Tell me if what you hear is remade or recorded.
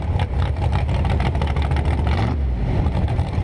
recorded